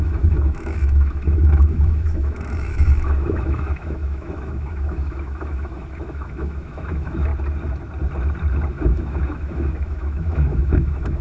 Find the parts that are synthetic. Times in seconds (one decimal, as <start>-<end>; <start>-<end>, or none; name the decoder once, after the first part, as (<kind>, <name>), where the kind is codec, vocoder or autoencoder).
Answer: 0.0-7.3 (autoencoder, DAC-VAE); 8.7-11.2